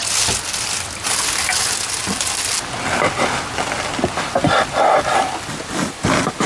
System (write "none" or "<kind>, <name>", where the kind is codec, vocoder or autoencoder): none